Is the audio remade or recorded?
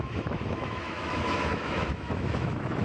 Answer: remade